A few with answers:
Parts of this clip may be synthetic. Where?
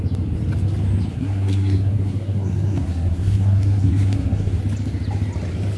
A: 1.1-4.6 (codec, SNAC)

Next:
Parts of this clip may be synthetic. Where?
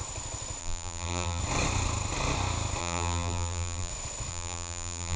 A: 0.6-1.4 (vocoder, BigVGAN v2); 2.8-3.9; 4.3-5.2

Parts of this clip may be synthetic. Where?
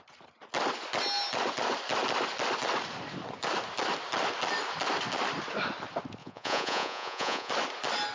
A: 6.2-7.5 (vocoder, Vocos)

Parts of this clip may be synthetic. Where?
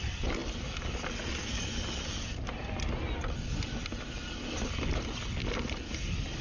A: none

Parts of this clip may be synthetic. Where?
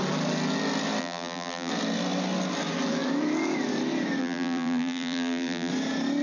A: 1.0-1.7 (vocoder, BigVGAN v2); 4.2-5.7